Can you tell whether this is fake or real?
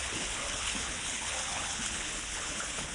fake